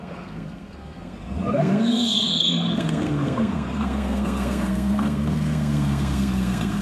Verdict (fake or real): fake